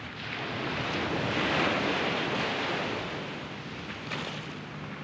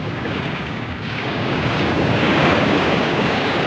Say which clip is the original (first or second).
first